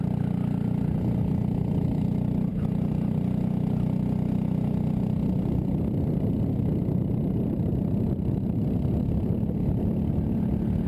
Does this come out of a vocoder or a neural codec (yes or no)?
no